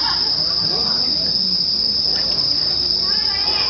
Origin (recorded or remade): recorded